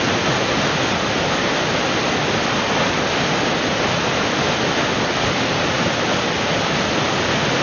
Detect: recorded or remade recorded